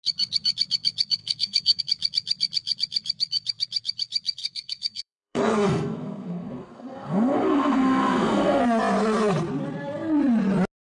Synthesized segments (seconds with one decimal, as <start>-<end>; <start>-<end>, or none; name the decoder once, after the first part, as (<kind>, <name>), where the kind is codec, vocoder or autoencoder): 1.2-1.8 (codec, SNAC); 4.4-8.6